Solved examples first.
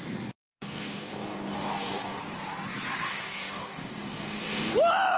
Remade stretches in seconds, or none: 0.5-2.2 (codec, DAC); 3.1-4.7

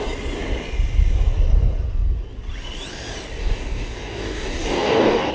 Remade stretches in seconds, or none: 3.4-5.3 (codec, DAC)